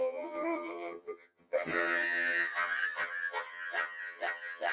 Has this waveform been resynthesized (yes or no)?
yes